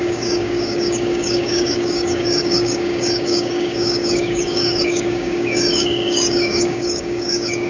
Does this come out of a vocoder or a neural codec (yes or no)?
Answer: yes